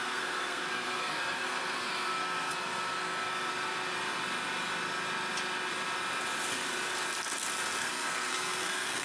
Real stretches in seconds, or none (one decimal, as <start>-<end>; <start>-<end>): 3.5-7.8